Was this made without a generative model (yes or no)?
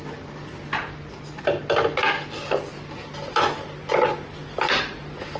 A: yes